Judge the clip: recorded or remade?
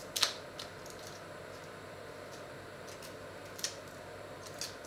recorded